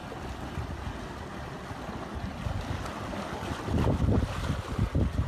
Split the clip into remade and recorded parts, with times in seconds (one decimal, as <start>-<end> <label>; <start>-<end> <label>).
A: 0.0-5.3 recorded